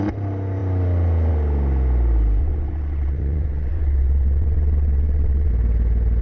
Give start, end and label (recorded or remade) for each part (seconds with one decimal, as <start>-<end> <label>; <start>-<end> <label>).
0.0-2.4 recorded; 2.4-5.5 remade; 5.5-6.2 recorded